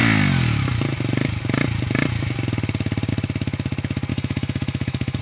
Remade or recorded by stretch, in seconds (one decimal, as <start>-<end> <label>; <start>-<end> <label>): 0.0-4.1 recorded; 4.1-5.2 remade